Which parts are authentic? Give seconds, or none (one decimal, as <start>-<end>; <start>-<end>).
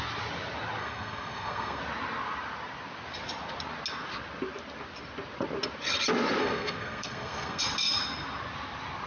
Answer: 0.0-0.8; 1.8-6.4; 7.6-9.1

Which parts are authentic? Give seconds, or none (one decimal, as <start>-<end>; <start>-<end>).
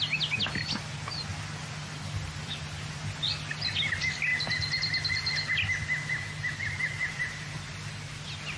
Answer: 0.0-8.6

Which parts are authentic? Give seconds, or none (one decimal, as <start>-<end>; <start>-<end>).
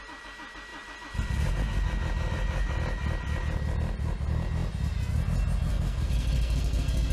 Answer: 0.0-5.7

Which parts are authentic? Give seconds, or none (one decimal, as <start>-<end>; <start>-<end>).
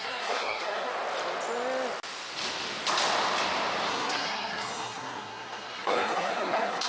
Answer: 0.9-3.9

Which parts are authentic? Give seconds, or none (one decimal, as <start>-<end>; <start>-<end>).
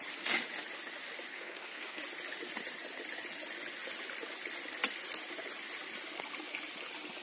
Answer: 0.0-1.3; 2.0-7.2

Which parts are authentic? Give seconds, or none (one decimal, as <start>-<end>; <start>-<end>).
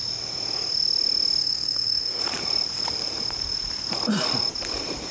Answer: 0.0-1.4; 2.2-5.1